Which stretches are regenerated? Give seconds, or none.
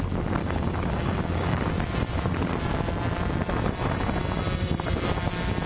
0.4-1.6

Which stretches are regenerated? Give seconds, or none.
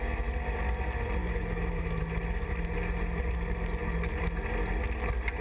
1.2-2.0